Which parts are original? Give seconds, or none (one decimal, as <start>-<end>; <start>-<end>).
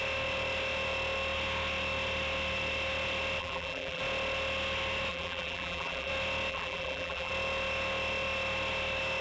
0.0-3.4; 4.0-5.1; 6.1-6.5; 7.3-9.2